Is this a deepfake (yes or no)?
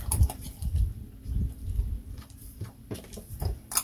yes